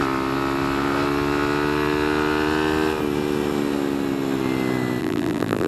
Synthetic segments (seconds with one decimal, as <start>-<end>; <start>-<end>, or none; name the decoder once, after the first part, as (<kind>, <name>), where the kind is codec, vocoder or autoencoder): 5.0-5.7 (vocoder, BigVGAN v2)